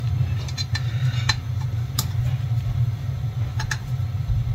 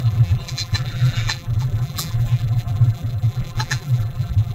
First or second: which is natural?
first